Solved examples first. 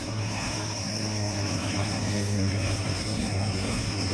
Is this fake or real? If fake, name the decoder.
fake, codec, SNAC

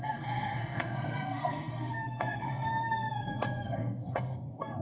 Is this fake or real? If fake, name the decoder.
fake, codec, SNAC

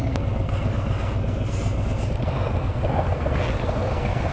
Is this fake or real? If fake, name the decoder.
fake, codec, SNAC